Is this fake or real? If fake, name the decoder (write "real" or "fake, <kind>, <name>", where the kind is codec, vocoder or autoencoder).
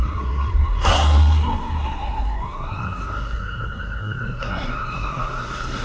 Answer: fake, codec, SNAC